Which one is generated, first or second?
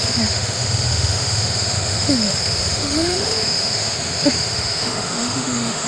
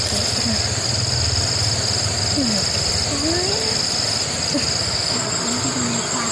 first